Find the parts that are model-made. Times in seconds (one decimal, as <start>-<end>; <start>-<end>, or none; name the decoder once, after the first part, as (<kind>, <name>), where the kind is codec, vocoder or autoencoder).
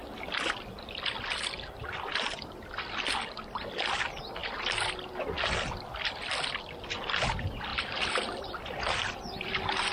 4.4-5.1 (vocoder, BigVGAN v2); 7.7-9.9